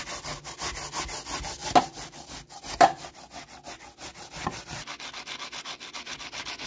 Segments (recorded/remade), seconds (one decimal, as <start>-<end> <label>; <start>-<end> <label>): 0.0-6.7 recorded